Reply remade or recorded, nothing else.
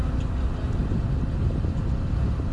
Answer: recorded